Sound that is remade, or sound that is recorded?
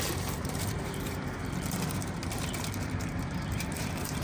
remade